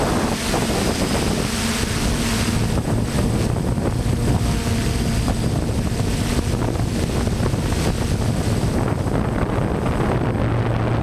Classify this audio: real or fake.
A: real